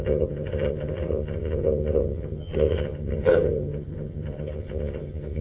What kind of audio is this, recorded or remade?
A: remade